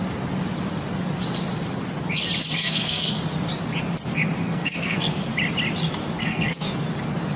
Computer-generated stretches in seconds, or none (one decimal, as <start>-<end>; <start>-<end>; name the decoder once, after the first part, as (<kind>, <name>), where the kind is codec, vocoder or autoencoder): 2.6-3.1 (codec, SNAC); 4.4-5.1; 6.2-6.7